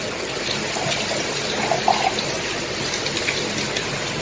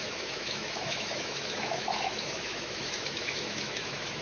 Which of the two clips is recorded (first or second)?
first